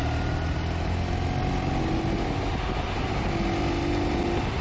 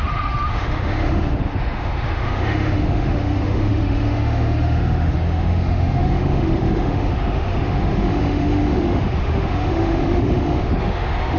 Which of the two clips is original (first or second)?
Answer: first